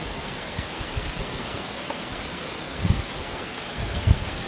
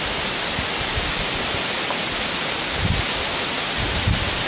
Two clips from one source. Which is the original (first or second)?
second